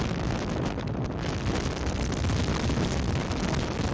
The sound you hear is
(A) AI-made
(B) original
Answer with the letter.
B